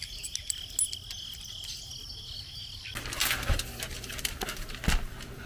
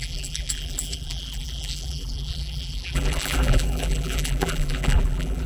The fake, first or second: second